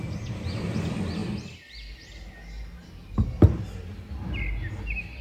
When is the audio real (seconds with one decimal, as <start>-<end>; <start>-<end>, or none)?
0.0-5.2